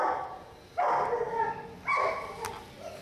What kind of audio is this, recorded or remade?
recorded